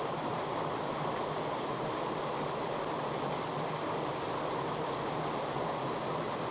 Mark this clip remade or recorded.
recorded